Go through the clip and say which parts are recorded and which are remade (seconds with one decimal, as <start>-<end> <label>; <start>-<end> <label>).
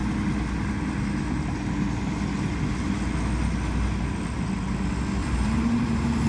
0.0-5.2 recorded; 5.2-6.3 remade